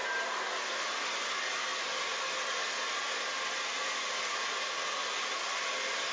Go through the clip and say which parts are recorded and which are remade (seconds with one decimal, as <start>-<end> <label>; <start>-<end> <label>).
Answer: 0.0-6.1 recorded